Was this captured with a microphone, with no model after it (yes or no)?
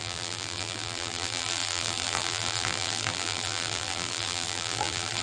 no